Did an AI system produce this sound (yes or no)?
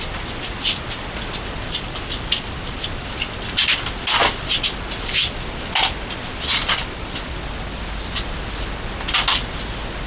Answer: no